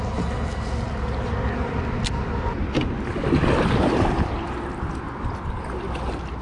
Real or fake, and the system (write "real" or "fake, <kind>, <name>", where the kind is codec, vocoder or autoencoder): real